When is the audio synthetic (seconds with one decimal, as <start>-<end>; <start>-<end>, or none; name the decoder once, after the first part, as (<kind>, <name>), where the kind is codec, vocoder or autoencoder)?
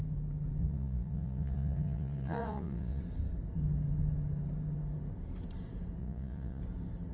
0.6-3.0 (vocoder, Vocos); 6.0-6.6